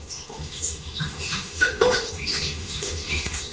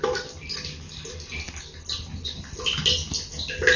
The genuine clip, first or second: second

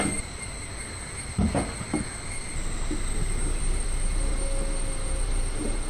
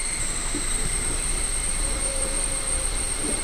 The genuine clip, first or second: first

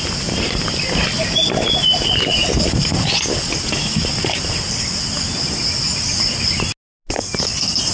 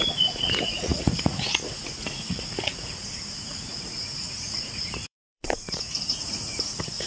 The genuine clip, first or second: first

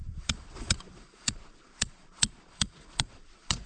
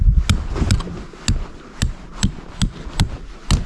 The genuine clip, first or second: second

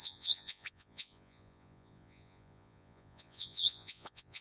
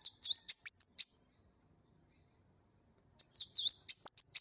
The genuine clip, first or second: second